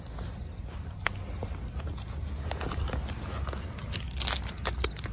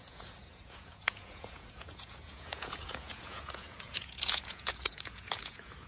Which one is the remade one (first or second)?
second